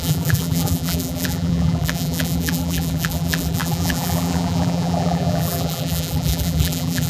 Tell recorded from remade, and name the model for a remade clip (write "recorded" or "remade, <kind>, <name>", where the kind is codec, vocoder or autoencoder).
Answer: remade, vocoder, BigVGAN v2